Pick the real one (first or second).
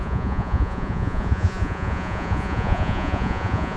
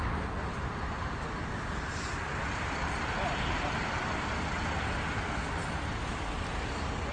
second